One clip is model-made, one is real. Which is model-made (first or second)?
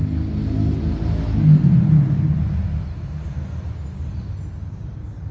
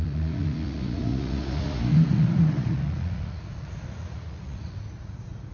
second